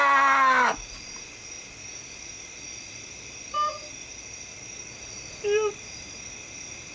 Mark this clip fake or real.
real